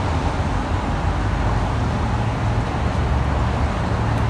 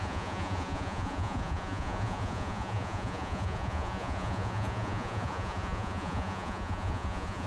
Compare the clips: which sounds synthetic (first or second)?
second